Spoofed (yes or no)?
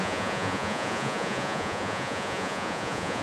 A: yes